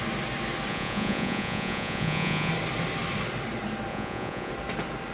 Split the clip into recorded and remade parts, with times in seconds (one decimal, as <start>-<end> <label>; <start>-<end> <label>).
0.0-0.7 recorded; 0.7-2.5 remade; 2.5-3.9 recorded; 3.9-4.5 remade; 4.5-5.1 recorded